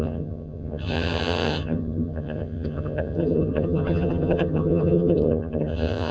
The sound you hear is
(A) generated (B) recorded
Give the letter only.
A